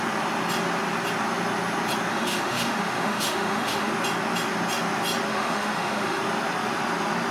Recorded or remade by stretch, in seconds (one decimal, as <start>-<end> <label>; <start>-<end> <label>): 0.0-2.1 recorded; 2.1-3.9 remade; 3.9-5.3 recorded; 5.3-6.2 remade; 6.2-7.3 recorded